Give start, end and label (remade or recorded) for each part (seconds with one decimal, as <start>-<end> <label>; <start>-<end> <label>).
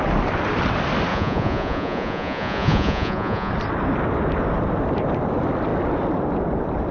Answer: 0.0-1.1 recorded; 1.1-3.5 remade; 3.5-6.9 recorded